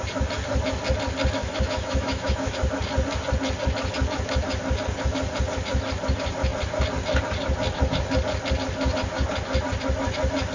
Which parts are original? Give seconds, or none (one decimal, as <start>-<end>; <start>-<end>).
0.0-1.4; 2.5-10.5